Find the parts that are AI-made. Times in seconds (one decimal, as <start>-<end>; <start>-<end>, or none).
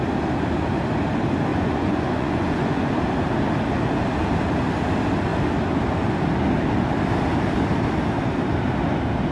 1.5-2.9